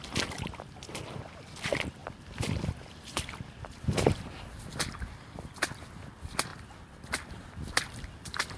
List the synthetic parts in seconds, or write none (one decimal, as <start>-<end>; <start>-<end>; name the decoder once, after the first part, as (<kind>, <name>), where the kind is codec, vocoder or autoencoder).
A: none